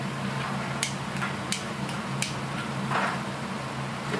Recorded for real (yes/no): yes